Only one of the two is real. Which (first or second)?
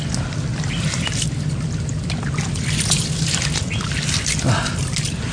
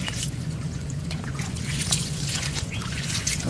first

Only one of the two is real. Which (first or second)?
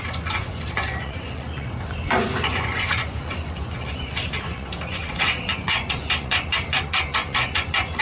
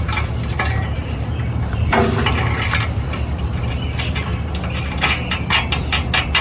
second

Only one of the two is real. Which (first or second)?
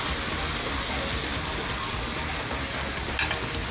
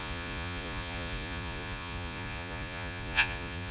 first